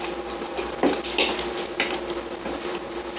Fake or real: real